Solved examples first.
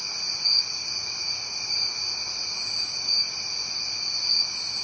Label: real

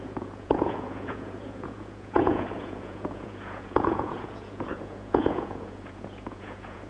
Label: fake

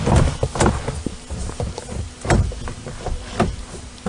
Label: real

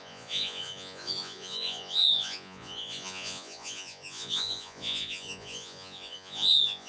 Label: fake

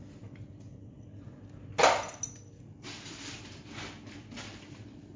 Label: real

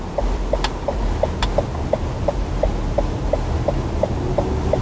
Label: real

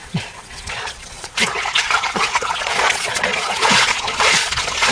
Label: fake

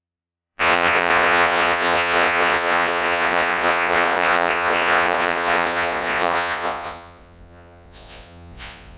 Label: fake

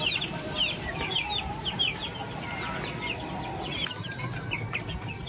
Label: real